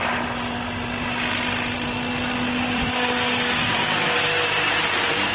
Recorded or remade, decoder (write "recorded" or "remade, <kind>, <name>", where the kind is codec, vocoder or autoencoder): remade, vocoder, BigVGAN v2